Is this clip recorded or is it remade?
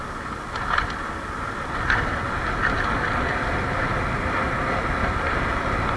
recorded